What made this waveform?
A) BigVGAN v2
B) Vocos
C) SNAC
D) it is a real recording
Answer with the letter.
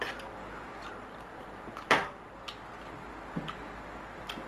D